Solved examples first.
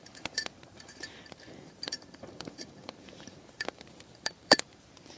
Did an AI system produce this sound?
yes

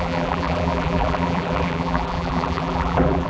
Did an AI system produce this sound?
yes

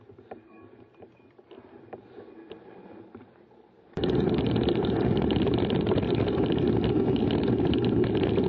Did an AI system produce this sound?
yes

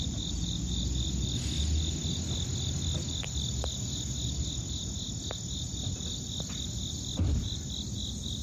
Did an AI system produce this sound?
no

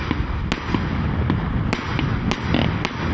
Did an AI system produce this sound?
no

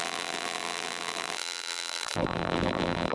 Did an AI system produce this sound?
yes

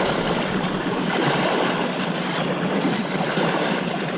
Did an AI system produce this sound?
yes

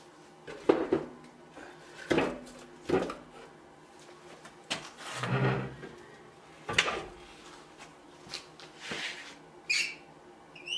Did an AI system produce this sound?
no